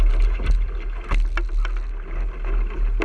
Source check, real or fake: real